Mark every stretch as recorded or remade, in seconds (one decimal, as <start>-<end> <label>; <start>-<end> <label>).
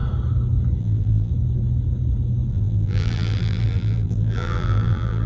0.0-0.8 recorded; 0.8-1.3 remade; 1.3-2.5 recorded; 2.5-5.3 remade